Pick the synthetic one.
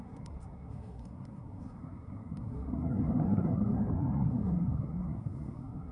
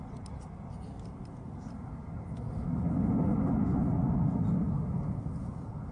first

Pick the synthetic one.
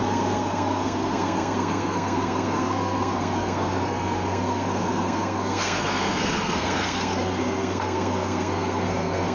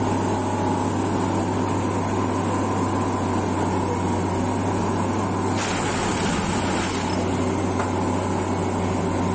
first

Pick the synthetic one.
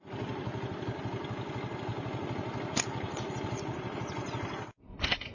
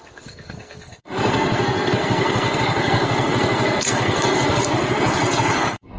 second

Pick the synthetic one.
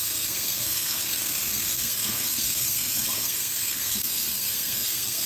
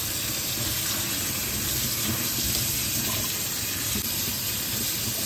first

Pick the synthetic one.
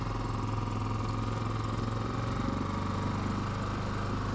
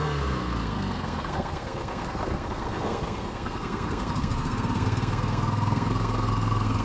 second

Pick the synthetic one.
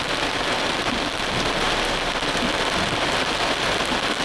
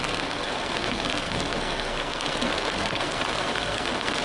second